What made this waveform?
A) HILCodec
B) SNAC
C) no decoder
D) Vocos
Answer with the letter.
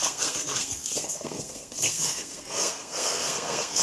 B